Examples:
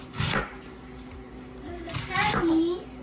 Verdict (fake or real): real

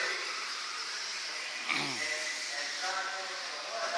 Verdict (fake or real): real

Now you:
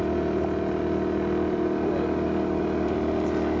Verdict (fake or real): real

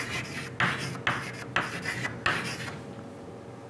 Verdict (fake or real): real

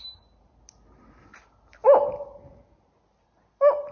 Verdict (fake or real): real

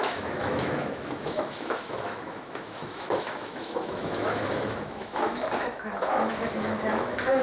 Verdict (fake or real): fake